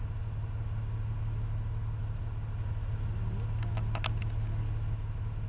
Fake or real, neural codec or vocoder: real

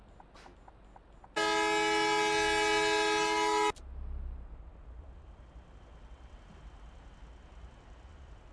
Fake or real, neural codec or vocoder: real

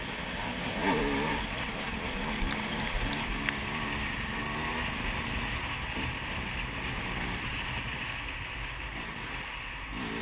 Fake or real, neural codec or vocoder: real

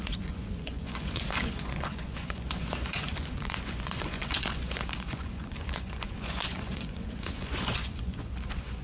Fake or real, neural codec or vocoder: fake, vocoder, Vocos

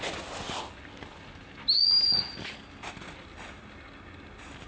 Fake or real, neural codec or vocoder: real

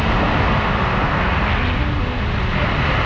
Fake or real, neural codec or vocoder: real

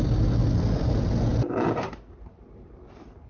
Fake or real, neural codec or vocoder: real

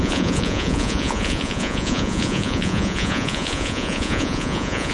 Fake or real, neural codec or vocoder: fake, vocoder, Vocos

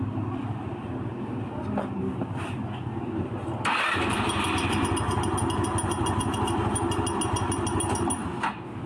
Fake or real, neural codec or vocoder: real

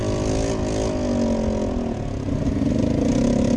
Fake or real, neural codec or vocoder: real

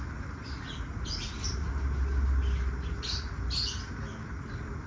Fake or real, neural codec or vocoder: real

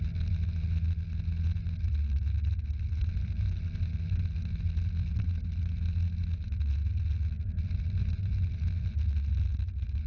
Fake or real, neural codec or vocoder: real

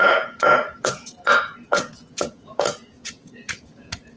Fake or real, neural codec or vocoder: fake, vocoder, Vocos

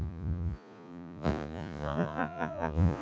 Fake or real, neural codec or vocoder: fake, vocoder, Vocos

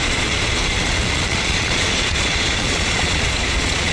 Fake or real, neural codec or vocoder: fake, vocoder, Vocos